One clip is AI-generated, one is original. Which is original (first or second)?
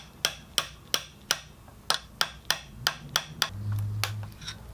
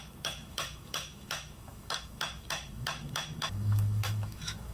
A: first